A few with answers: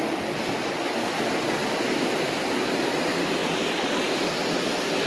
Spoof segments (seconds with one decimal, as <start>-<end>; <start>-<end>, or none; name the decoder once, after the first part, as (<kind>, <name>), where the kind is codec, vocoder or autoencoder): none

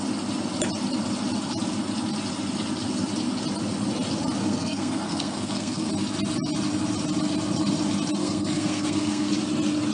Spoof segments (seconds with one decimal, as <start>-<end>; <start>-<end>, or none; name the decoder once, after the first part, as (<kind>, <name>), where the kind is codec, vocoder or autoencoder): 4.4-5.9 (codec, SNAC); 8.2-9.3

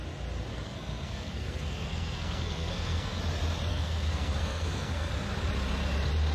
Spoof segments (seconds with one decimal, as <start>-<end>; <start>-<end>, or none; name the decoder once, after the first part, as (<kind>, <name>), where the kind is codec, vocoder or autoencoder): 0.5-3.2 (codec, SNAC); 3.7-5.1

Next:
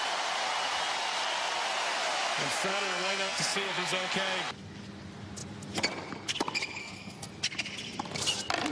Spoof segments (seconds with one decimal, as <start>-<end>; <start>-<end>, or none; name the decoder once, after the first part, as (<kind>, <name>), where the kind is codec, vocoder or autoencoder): 2.7-4.1 (codec, SNAC); 6.8-7.3

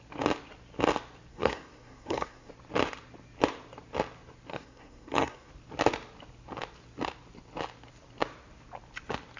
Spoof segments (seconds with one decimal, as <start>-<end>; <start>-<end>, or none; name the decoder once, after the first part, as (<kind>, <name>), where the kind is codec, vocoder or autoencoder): 1.3-2.5 (codec, SNAC); 4.5-5.5

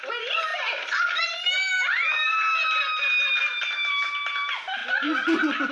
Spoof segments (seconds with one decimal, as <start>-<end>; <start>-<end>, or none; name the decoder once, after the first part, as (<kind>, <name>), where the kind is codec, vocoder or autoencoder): none